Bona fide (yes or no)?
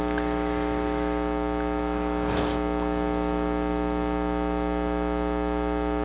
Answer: yes